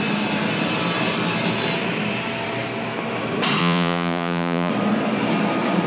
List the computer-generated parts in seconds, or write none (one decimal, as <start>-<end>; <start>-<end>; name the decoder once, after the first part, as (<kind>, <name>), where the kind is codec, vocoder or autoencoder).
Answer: 3.6-4.7 (vocoder, Vocos)